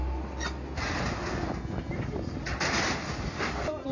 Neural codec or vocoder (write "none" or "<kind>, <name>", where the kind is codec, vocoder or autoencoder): none